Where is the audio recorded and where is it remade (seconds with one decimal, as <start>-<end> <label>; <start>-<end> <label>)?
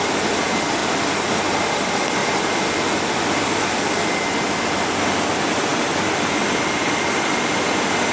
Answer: 0.0-0.8 recorded; 0.8-1.3 remade; 1.3-2.2 recorded; 2.2-3.8 remade; 3.8-8.1 recorded